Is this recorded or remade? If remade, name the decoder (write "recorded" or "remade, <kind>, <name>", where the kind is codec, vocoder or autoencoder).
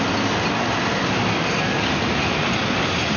recorded